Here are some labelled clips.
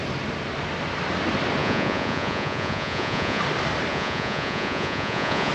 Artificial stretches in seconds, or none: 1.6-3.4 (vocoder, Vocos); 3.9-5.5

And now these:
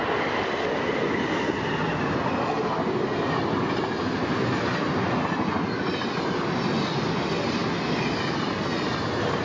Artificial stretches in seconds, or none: none